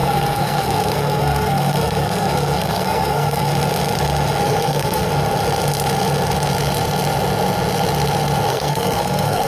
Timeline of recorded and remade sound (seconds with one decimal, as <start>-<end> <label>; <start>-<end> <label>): 0.0-3.5 remade; 3.5-4.4 recorded; 4.4-5.1 remade; 5.1-8.5 recorded; 8.5-9.5 remade